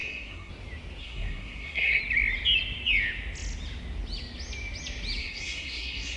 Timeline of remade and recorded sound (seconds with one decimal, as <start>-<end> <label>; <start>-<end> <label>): 0.0-0.5 remade; 0.5-1.0 recorded; 1.0-2.0 remade; 2.0-5.2 recorded; 5.2-6.2 remade